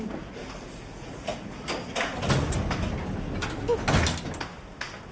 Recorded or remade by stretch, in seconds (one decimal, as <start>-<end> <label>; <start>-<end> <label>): 0.0-0.7 recorded; 0.7-1.7 remade; 1.7-5.1 recorded